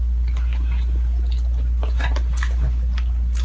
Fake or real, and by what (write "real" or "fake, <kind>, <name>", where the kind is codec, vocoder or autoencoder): real